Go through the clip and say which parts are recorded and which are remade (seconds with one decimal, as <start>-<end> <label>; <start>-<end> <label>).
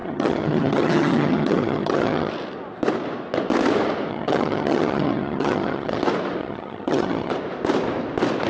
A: 0.0-2.3 remade; 2.3-4.1 recorded; 4.1-6.0 remade; 6.0-6.4 recorded; 6.4-7.3 remade; 7.3-8.5 recorded